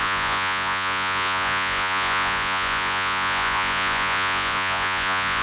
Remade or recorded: remade